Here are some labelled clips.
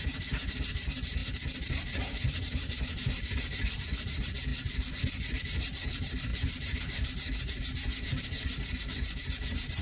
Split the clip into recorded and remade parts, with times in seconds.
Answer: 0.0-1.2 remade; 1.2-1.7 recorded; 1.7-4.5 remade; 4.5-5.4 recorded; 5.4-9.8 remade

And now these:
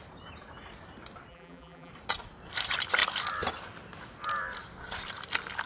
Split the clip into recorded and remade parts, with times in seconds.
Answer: 0.0-1.3 recorded; 1.3-1.9 remade; 1.9-5.7 recorded

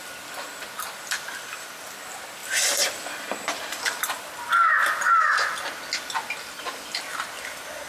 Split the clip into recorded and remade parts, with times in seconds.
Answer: 0.0-2.4 recorded; 2.4-3.8 remade; 3.8-7.9 recorded

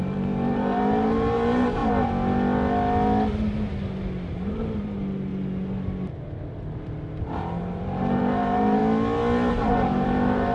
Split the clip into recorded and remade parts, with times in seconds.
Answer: 0.0-1.8 remade; 1.8-4.3 recorded; 4.3-5.3 remade; 5.3-7.2 recorded; 7.2-8.8 remade; 8.8-9.5 recorded; 9.5-10.5 remade

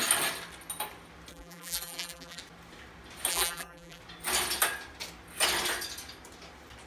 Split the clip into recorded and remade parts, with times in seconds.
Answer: 0.0-1.3 recorded; 1.3-2.4 remade; 2.4-3.3 recorded; 3.3-4.0 remade; 4.0-6.9 recorded